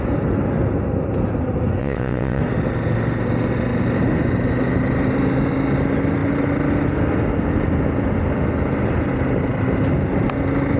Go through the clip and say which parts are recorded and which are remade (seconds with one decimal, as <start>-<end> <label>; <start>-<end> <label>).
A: 0.0-1.8 recorded; 1.8-2.4 remade; 2.4-10.8 recorded